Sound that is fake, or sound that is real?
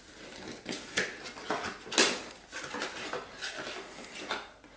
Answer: real